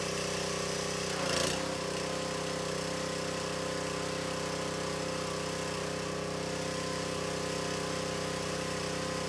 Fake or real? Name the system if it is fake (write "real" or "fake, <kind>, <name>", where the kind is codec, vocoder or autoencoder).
real